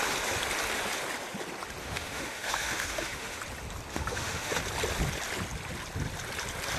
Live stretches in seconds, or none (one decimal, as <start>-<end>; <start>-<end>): 0.0-1.8; 3.4-3.9; 4.5-6.8